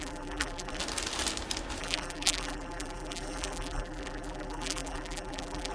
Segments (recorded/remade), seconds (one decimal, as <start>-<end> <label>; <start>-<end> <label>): 0.0-0.8 remade; 0.8-1.8 recorded; 1.8-5.7 remade